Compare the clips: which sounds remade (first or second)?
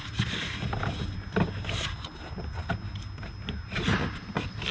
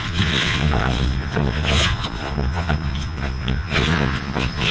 second